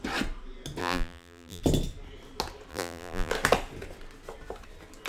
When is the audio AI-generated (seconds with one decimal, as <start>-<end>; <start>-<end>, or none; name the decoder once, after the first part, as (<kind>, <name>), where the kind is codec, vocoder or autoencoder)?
0.8-1.6 (vocoder, BigVGAN v2); 2.7-3.3